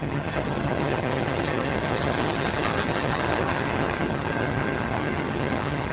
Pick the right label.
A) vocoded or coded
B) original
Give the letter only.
A